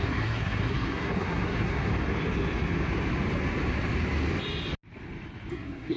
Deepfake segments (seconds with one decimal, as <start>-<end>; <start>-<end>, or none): 0.0-1.9; 5.5-6.0